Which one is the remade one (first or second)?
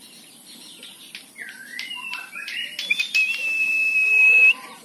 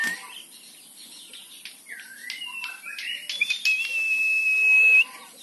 first